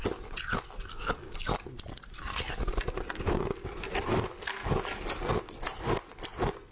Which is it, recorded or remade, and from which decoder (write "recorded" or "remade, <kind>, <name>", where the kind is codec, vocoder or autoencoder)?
recorded